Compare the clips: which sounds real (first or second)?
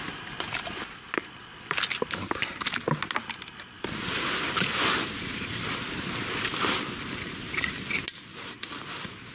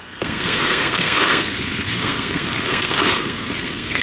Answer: first